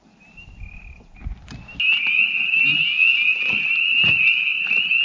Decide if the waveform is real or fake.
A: real